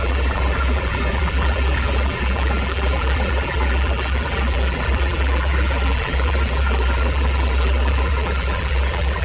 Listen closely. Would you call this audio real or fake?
fake